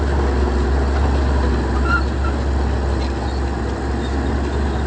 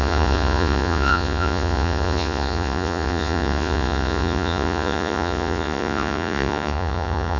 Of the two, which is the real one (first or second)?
first